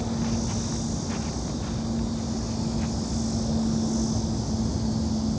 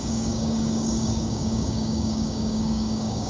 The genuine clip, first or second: first